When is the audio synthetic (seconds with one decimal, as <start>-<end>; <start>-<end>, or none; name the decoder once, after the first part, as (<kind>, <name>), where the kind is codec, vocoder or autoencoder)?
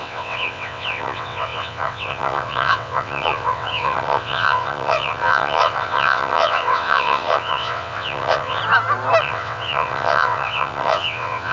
0.0-8.6 (vocoder, WaveNeXt); 9.2-11.5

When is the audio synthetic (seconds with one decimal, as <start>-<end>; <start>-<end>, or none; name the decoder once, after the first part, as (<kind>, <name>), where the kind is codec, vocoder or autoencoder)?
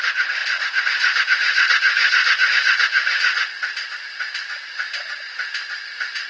none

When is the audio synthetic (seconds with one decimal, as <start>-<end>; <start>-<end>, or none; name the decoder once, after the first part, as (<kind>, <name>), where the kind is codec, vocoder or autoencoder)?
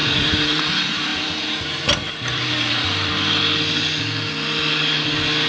0.0-0.6 (vocoder, BigVGAN v2); 1.1-3.4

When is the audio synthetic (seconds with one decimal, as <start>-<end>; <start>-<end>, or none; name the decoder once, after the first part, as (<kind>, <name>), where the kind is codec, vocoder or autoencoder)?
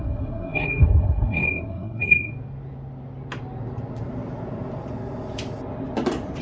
0.0-2.3 (codec, SNAC)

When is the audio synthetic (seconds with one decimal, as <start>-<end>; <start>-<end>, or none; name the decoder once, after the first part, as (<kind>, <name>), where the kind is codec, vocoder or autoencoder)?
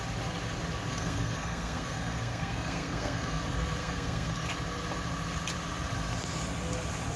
0.9-3.4 (codec, SNAC); 3.8-4.3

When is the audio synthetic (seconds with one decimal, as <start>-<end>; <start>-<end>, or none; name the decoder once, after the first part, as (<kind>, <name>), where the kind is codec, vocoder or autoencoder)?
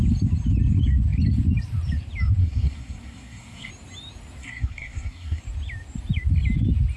2.4-3.7 (codec, SNAC); 4.4-5.4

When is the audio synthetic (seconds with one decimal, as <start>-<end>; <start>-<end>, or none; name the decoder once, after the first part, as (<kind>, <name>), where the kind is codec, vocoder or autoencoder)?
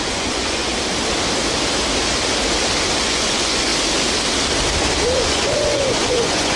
0.0-0.7 (vocoder, Vocos); 3.0-3.7; 5.2-6.6